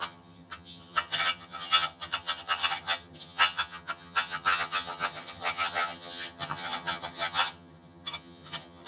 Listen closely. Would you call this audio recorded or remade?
remade